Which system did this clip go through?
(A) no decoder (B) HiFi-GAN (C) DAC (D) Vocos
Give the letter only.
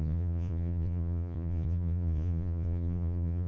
D